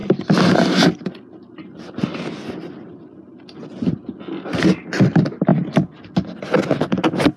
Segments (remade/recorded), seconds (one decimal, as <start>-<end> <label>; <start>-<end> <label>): 0.0-7.4 recorded